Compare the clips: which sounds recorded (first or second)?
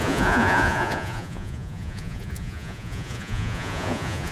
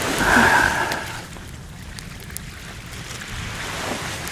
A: second